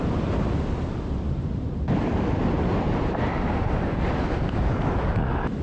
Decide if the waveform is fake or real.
real